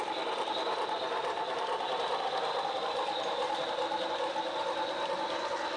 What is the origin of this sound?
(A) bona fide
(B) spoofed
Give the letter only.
A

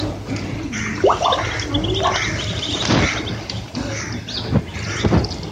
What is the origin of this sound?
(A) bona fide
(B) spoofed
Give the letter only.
A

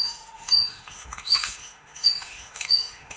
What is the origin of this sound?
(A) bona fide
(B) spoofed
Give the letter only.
B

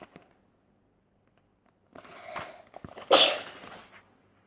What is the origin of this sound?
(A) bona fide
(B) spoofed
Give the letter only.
A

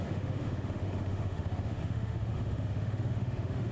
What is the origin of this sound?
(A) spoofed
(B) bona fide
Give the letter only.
A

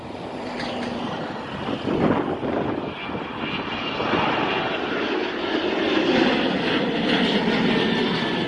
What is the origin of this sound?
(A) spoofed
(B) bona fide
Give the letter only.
B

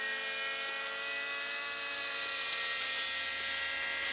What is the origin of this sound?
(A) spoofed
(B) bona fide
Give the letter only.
B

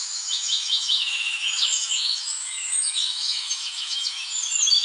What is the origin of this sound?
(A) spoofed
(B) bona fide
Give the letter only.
A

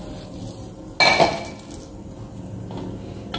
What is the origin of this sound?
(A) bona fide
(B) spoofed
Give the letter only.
A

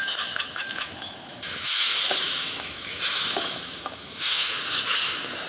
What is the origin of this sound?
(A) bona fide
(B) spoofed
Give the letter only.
B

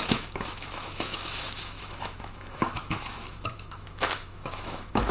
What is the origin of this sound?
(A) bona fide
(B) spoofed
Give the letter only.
B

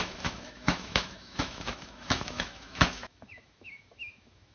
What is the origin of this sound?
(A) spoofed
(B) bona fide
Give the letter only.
A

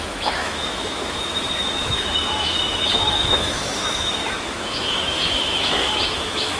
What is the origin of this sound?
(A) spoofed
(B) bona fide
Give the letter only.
A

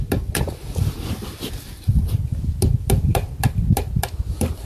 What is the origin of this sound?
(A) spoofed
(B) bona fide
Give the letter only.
B